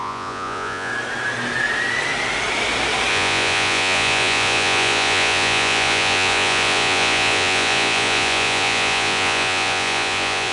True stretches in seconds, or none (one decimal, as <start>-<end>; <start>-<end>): 0.9-3.1